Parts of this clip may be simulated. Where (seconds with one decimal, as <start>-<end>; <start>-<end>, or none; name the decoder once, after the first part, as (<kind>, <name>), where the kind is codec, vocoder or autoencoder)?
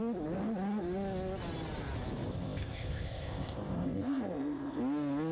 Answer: 2.3-4.8 (codec, ZipCodec)